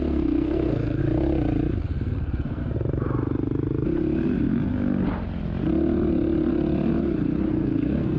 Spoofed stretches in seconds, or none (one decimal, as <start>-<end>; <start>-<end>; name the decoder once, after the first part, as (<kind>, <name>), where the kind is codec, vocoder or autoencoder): 0.0-1.0 (codec, SNAC); 1.8-2.6; 7.5-8.2